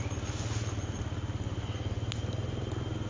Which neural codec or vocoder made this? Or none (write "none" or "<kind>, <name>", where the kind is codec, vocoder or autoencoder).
none